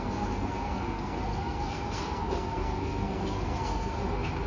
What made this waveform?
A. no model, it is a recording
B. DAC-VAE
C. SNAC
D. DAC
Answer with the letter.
C